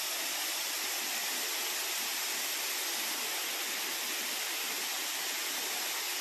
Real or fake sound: real